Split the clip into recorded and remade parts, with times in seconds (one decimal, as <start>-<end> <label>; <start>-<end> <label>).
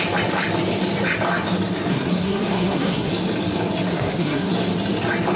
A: 0.0-1.9 recorded; 1.9-3.1 remade; 3.1-3.9 recorded; 3.9-4.5 remade; 4.5-5.4 recorded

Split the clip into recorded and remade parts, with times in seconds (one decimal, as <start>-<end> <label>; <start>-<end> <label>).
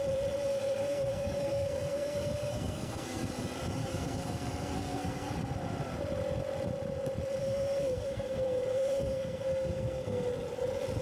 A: 0.0-0.5 recorded; 0.5-3.3 remade; 3.3-3.8 recorded; 3.8-5.3 remade; 5.3-7.4 recorded; 7.4-10.3 remade; 10.3-11.0 recorded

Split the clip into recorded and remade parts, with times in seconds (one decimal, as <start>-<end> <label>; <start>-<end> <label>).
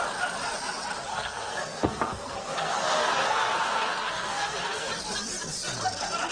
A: 0.0-1.1 recorded; 1.1-4.9 remade; 4.9-6.3 recorded